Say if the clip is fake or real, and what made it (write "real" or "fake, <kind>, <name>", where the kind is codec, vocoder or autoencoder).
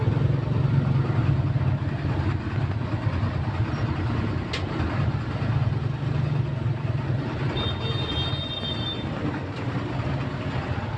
real